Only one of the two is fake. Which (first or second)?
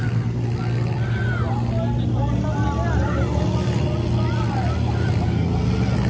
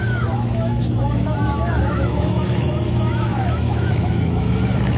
second